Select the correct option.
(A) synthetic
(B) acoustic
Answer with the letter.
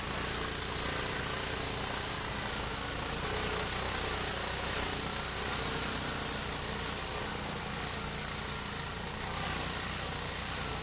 B